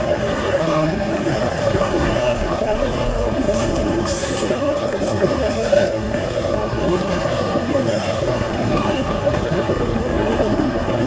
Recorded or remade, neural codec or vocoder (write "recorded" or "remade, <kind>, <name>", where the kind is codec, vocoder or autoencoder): remade, codec, SNAC